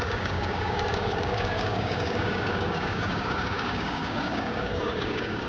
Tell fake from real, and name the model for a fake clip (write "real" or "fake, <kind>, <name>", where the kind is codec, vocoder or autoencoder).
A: fake, codec, DAC